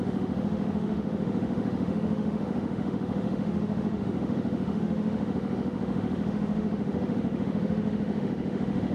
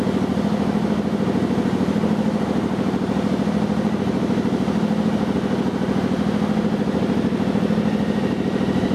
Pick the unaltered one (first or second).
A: second